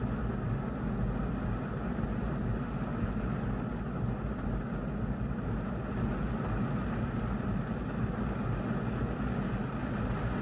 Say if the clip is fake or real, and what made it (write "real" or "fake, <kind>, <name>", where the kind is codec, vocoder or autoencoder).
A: real